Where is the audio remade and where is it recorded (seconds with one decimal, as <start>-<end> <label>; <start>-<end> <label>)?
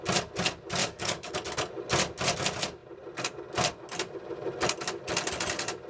0.0-0.8 recorded; 0.8-1.3 remade; 1.3-5.9 recorded